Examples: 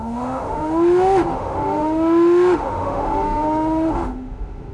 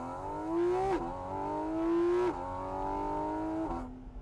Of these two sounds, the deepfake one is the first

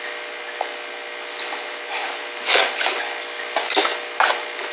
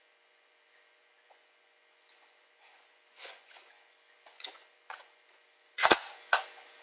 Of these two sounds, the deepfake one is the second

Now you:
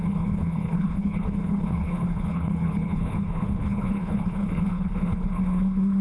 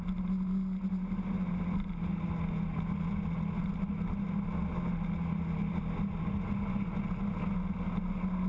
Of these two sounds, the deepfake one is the first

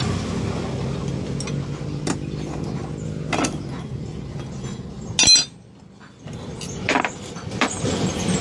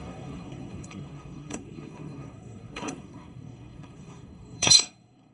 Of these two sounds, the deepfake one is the second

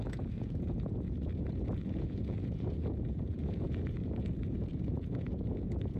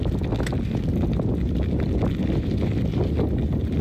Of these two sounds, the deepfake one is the first